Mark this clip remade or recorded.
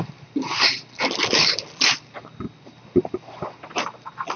recorded